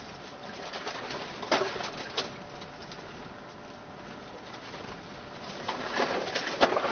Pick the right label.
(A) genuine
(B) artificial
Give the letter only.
A